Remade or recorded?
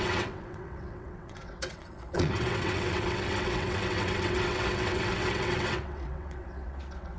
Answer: remade